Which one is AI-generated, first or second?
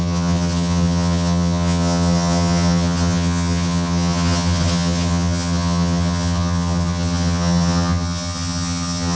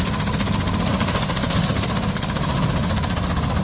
first